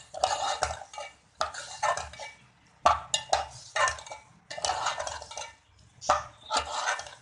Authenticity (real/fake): real